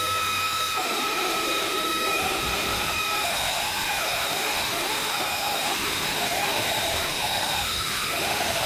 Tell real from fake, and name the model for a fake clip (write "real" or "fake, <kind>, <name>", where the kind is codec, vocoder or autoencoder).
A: fake, autoencoder, DAC-VAE